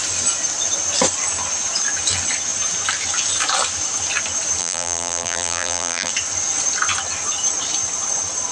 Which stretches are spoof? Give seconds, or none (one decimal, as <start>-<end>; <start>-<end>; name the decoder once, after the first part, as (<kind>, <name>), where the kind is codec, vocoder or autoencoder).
4.6-6.1 (vocoder, BigVGAN v2)